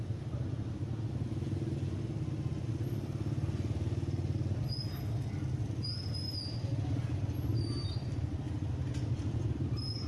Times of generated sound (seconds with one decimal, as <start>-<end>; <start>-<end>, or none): none